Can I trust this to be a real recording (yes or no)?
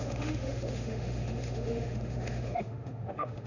no